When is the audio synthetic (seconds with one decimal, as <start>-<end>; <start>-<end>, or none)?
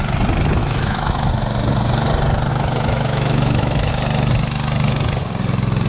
0.6-1.3; 2.5-3.9